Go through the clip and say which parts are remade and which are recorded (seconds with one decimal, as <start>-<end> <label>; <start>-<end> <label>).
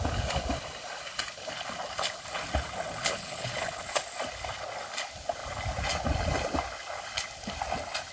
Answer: 0.0-3.0 recorded; 3.0-4.0 remade; 4.0-8.1 recorded